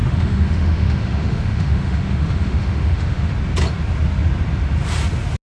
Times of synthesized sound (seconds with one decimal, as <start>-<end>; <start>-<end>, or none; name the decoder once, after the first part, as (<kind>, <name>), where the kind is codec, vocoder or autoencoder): 0.0-3.3 (autoencoder, DAC-VAE)

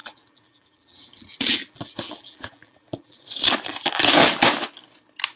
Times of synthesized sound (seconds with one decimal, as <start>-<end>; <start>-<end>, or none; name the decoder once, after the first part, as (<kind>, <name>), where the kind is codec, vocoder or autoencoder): 0.0-3.2 (vocoder, BigVGAN v2)

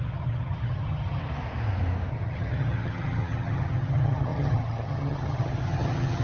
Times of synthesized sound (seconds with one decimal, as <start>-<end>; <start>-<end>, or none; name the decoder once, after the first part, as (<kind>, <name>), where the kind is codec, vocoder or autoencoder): 0.0-1.2 (vocoder, HiFi-GAN); 2.1-6.2

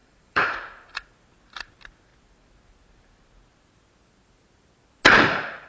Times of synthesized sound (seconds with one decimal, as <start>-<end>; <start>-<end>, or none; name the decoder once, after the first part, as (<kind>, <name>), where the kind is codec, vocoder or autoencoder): 0.0-1.1 (vocoder, BigVGAN v2)

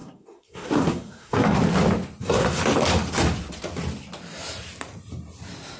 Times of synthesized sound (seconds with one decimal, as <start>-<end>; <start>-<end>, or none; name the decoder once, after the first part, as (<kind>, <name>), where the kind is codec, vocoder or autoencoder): 0.0-1.6 (codec, SNAC); 2.2-2.6